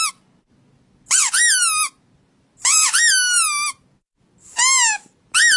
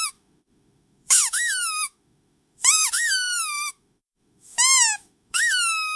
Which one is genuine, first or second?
first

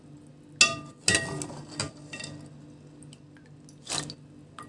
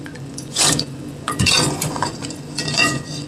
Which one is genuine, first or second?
first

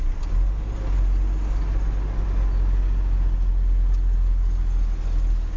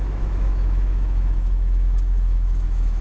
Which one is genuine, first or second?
first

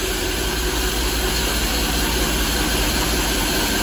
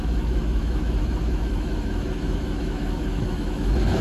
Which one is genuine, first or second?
first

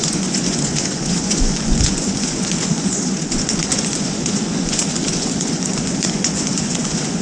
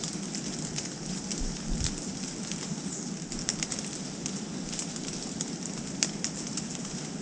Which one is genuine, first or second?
second